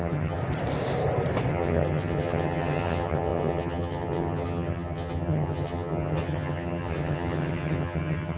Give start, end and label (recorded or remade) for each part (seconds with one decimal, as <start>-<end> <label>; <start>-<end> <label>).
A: 0.0-0.4 remade; 0.4-1.5 recorded; 1.5-8.4 remade